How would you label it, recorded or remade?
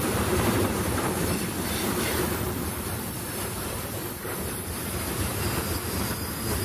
remade